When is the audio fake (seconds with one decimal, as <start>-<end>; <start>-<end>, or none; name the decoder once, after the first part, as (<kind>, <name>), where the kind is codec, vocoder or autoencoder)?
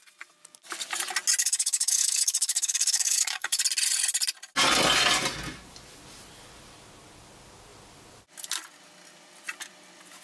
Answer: 1.4-3.6 (codec, DAC)